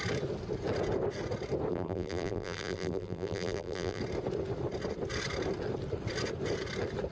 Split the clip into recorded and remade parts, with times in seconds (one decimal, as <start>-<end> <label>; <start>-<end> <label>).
0.0-1.7 recorded; 1.7-4.0 remade; 4.0-7.1 recorded